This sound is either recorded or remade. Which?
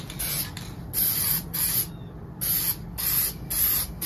recorded